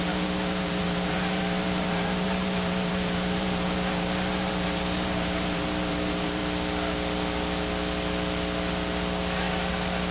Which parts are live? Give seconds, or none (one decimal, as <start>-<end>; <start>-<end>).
6.4-10.1